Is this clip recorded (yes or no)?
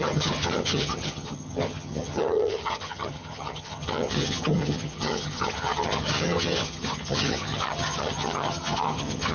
no